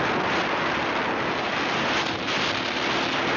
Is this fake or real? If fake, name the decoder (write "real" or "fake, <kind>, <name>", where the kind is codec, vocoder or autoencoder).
real